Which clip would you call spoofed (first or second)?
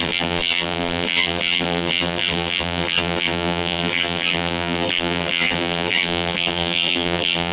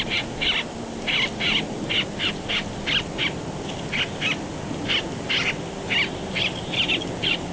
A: first